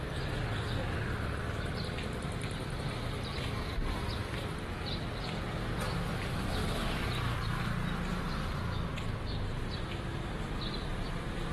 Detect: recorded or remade recorded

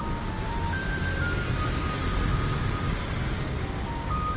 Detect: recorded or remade recorded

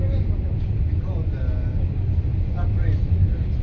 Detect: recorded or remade recorded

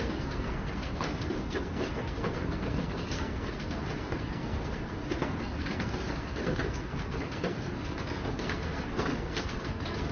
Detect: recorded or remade remade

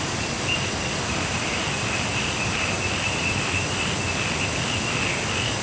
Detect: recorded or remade recorded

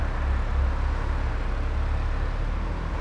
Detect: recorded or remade recorded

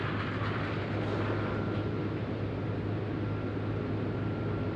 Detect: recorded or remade recorded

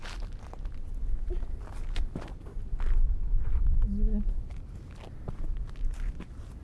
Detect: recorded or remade recorded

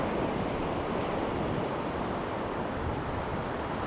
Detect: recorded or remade remade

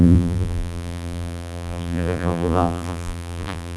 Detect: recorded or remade remade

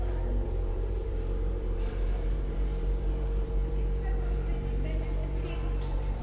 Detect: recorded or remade remade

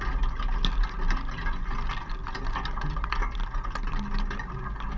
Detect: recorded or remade recorded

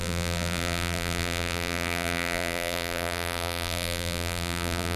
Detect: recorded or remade remade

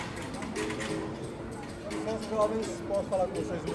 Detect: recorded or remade recorded